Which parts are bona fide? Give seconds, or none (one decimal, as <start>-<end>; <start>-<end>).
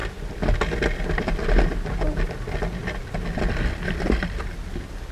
0.0-5.1